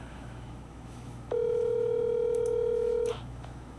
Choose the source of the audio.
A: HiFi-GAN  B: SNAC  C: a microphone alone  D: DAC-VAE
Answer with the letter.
D